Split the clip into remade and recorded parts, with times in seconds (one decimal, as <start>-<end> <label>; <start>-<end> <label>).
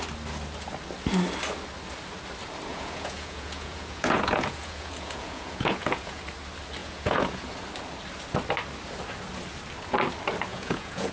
0.0-2.7 recorded; 2.7-6.2 remade; 6.2-6.8 recorded; 6.8-7.5 remade; 7.5-10.5 recorded; 10.5-11.1 remade